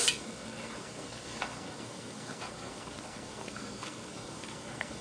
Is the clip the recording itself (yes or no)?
no